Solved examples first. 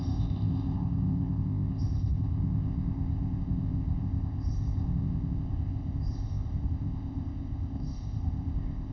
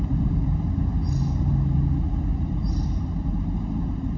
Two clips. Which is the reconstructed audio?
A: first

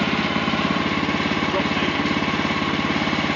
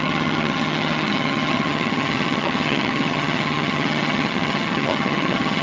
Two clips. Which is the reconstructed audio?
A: second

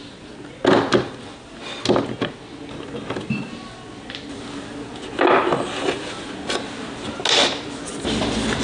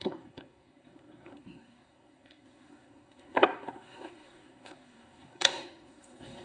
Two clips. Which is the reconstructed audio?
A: second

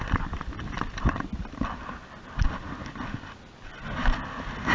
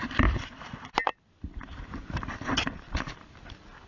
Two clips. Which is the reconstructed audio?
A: second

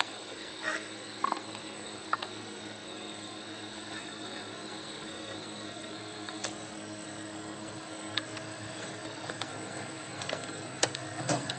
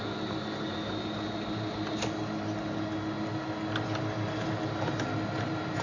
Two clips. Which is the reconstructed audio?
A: first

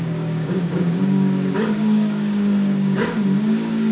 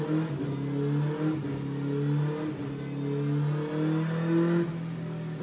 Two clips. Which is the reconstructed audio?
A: first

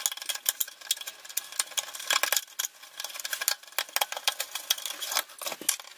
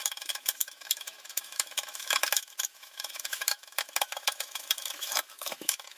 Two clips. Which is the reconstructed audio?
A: second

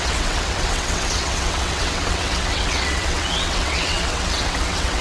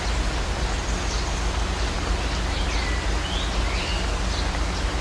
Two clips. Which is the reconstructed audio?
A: first